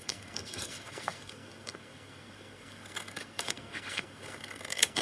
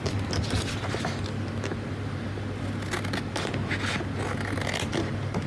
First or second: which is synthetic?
first